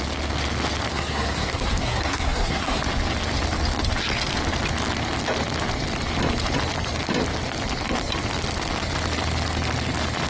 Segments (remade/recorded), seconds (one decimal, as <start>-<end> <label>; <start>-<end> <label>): 0.0-0.9 recorded; 0.9-2.8 remade; 2.8-10.3 recorded